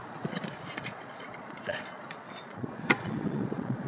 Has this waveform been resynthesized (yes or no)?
yes